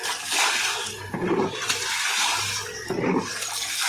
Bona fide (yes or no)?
yes